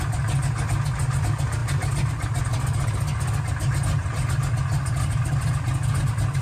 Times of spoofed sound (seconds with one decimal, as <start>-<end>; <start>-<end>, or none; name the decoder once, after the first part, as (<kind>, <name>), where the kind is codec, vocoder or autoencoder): none